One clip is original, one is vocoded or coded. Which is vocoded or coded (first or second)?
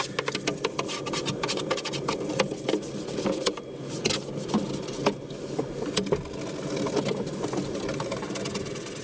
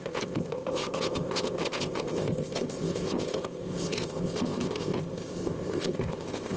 second